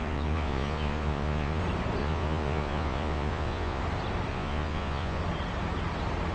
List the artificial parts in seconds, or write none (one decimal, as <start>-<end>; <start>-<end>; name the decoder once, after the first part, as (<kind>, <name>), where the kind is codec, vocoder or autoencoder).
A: 0.0-1.6 (vocoder, Vocos); 2.0-3.8; 4.3-5.2